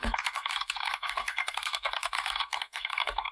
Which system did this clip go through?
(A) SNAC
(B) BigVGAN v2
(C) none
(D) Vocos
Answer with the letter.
A